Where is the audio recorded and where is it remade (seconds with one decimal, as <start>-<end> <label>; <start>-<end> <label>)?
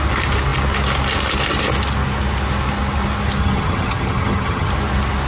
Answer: 0.0-3.4 recorded; 3.4-4.7 remade; 4.7-5.3 recorded